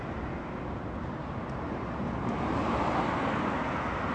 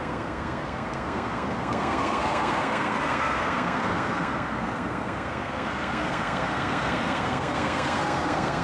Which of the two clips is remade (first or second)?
second